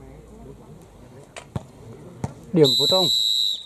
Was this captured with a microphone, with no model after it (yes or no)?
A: yes